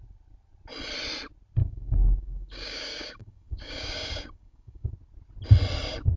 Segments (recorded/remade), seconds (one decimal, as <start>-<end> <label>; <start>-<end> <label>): 0.0-1.6 recorded; 1.6-4.9 remade; 4.9-6.2 recorded